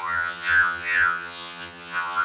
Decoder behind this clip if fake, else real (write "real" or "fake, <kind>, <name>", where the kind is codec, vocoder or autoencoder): fake, vocoder, HiFi-GAN